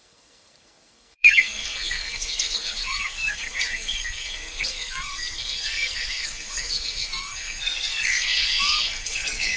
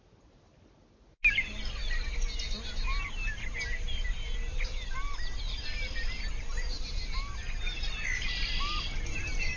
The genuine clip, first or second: second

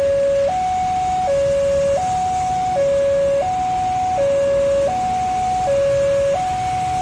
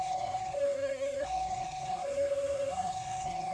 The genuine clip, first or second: first